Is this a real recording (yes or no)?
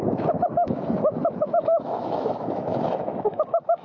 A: no